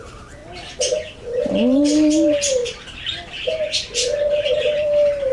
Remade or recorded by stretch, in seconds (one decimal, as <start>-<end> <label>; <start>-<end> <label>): 0.0-0.4 remade; 0.4-1.5 recorded; 1.5-2.6 remade; 2.6-4.3 recorded; 4.3-5.3 remade